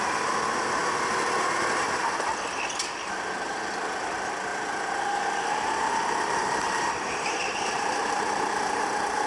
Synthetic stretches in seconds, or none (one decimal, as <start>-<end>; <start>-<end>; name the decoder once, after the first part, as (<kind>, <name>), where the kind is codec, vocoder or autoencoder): 4.5-9.3 (vocoder, BigVGAN v2)